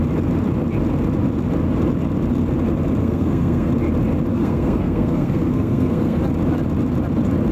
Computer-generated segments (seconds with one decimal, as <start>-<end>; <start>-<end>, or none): 3.0-3.7; 4.3-6.2